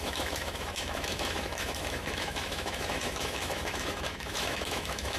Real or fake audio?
fake